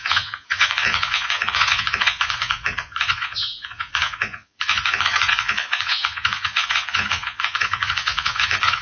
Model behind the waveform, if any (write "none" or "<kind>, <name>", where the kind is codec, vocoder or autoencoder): vocoder, Vocos